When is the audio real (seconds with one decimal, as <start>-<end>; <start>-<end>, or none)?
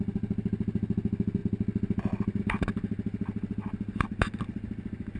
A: 0.0-5.2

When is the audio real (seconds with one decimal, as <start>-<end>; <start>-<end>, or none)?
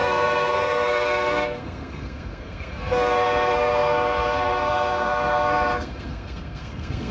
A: none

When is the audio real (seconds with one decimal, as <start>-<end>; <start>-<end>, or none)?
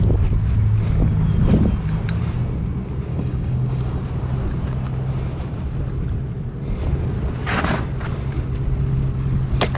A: 0.0-3.1; 4.0-9.8